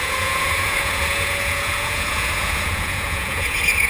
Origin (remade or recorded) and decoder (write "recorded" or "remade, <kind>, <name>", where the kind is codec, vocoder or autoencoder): remade, vocoder, Vocos